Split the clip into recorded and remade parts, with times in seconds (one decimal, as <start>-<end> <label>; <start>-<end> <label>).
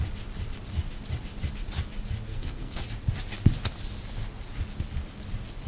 0.0-2.3 recorded; 2.3-2.8 remade; 2.8-5.7 recorded